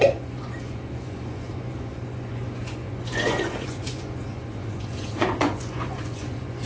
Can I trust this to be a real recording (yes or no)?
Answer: no